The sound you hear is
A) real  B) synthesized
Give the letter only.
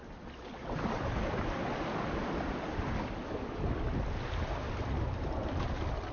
A